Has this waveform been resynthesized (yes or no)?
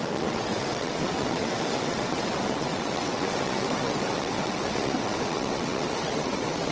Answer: yes